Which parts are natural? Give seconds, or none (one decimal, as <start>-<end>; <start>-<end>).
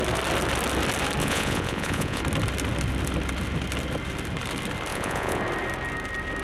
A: 0.0-1.2; 2.2-4.9; 5.4-6.4